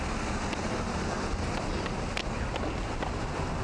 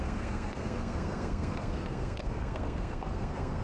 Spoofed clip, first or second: second